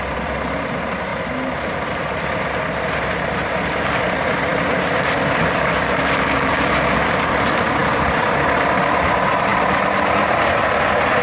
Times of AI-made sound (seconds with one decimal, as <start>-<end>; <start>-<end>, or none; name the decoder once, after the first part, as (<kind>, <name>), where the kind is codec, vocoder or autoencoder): 0.0-1.1 (vocoder, BigVGAN v2); 2.3-11.2